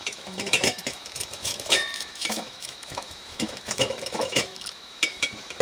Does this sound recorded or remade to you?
remade